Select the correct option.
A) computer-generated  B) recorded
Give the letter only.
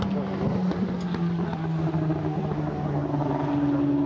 B